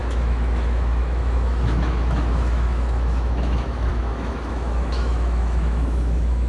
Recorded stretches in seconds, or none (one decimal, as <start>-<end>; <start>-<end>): none